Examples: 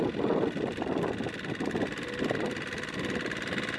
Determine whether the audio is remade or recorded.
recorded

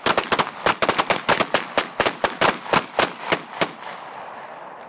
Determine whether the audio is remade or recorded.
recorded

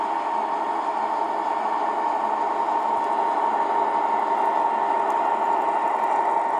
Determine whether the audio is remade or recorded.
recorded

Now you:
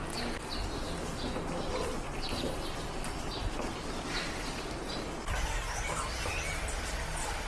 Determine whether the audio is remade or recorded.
recorded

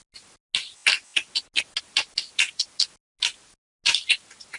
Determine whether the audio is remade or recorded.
recorded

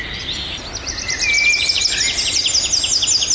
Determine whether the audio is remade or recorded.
recorded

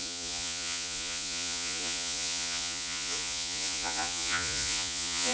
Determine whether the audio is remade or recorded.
remade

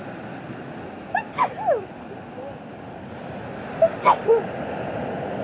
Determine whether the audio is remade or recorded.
recorded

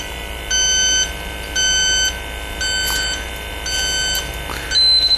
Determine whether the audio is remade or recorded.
recorded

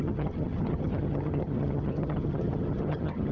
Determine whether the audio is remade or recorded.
remade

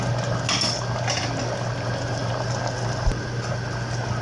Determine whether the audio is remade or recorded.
recorded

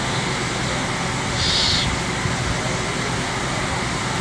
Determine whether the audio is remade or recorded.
recorded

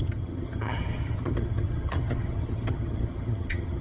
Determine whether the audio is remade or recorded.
remade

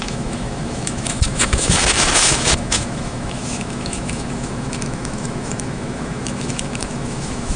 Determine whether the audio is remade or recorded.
remade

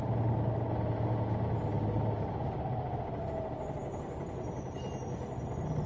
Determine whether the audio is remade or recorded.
recorded